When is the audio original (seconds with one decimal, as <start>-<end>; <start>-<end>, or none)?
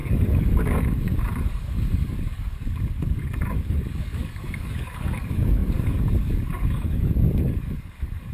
none